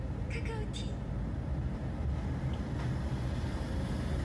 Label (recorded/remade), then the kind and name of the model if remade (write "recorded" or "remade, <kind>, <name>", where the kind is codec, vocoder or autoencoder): recorded